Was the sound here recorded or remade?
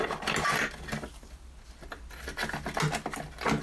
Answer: recorded